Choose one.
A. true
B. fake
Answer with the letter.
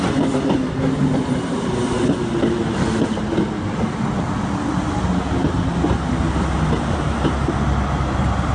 A